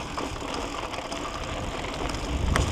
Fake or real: fake